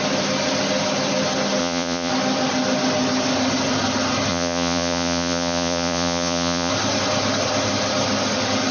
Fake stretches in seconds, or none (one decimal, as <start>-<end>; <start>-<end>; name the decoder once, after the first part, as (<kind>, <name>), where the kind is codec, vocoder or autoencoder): 1.6-2.1 (vocoder, Vocos); 4.3-6.7